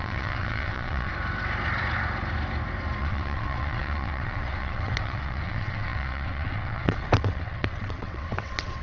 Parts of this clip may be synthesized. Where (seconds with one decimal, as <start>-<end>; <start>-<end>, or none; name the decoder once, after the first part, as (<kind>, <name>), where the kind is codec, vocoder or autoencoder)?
0.0-1.1 (vocoder, WaveNeXt); 3.0-8.8